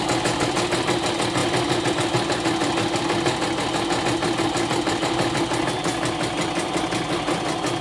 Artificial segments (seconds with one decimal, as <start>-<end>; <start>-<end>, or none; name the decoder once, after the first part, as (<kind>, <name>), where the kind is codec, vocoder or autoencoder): none